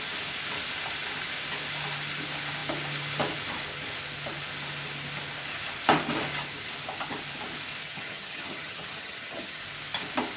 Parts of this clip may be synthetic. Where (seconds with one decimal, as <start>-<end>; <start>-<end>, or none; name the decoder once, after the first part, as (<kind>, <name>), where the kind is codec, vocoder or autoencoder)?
7.8-9.6 (vocoder, HiFi-GAN)